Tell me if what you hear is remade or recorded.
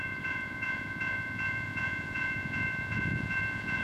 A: remade